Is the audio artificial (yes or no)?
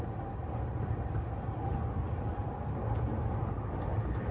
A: no